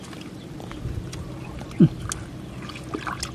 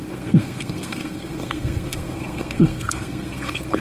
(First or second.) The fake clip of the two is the second